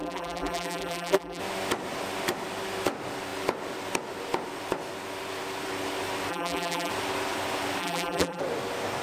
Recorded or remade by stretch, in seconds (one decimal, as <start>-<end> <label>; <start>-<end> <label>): 0.0-1.4 remade; 1.4-6.3 recorded; 6.3-6.9 remade; 6.9-7.8 recorded; 7.8-8.4 remade; 8.4-9.0 recorded